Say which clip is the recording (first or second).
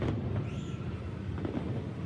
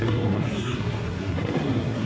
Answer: first